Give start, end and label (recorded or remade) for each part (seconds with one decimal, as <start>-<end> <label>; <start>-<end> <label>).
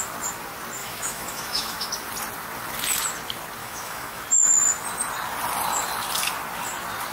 0.0-0.8 recorded; 0.8-1.9 remade; 1.9-3.6 recorded; 3.6-4.2 remade; 4.2-7.1 recorded